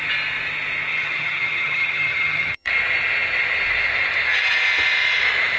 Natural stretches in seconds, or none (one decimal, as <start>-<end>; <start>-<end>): 0.0-0.9; 2.7-5.6